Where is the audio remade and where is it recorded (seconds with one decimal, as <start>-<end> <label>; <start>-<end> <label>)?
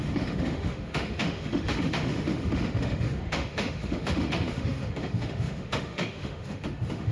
0.0-7.1 remade